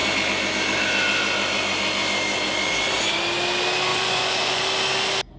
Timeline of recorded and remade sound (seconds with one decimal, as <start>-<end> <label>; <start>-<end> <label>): 0.0-3.9 recorded; 3.9-4.6 remade; 4.6-5.4 recorded